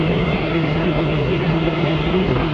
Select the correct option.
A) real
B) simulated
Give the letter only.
B